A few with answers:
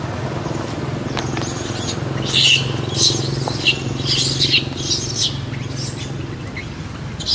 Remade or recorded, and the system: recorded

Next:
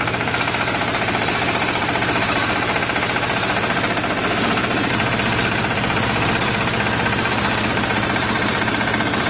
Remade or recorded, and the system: remade, vocoder, BigVGAN v2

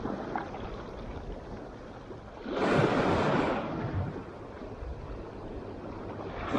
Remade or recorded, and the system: recorded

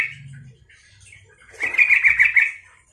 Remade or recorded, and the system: recorded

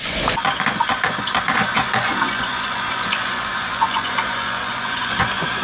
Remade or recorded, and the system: remade, vocoder, Vocos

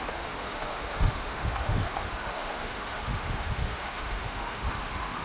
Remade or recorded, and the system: remade, autoencoder, DAC-VAE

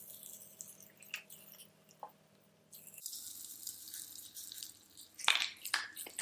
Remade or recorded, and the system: recorded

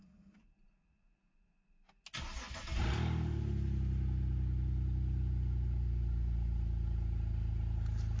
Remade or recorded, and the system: recorded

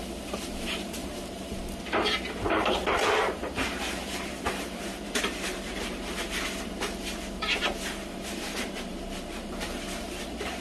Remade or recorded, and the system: remade, vocoder, BigVGAN v2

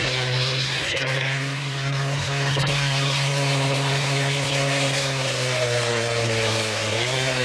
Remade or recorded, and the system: remade, codec, SNAC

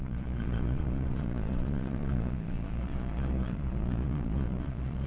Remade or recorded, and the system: remade, vocoder, Vocos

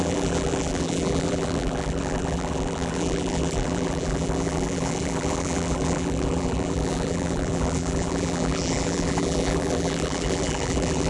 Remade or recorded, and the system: remade, vocoder, BigVGAN v2